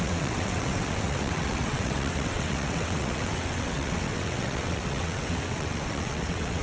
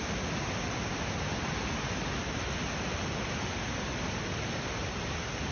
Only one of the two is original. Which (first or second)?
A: second